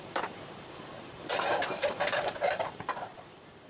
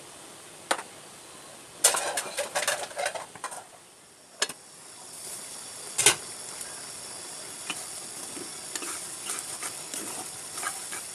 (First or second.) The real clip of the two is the second